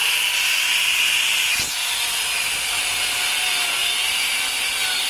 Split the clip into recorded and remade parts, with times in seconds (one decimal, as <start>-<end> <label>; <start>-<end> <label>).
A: 0.0-5.1 recorded

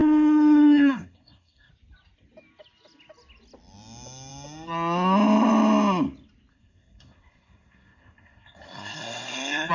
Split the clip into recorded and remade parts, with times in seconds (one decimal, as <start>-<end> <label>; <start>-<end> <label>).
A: 0.0-1.7 remade; 1.7-6.5 recorded; 6.5-9.7 remade

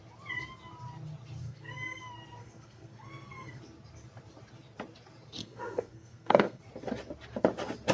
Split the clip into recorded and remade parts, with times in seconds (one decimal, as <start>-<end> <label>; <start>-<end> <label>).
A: 0.0-1.4 recorded; 1.4-2.0 remade; 2.0-2.4 recorded; 2.4-3.6 remade; 3.6-5.4 recorded; 5.4-6.6 remade; 6.6-7.9 recorded

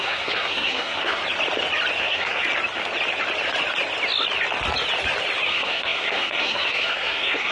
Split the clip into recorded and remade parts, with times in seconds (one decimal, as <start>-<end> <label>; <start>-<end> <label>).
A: 0.0-1.2 remade; 1.2-2.0 recorded; 2.0-2.4 remade; 2.4-5.5 recorded; 5.5-7.5 remade

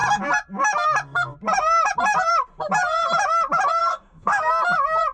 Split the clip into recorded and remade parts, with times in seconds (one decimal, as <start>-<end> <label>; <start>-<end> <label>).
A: 0.0-3.8 recorded; 3.8-4.5 remade; 4.5-5.1 recorded